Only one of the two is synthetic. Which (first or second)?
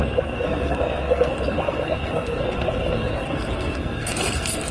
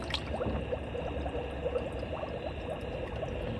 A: first